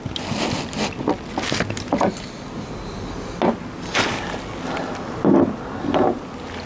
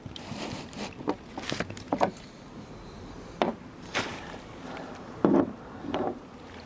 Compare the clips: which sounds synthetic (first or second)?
second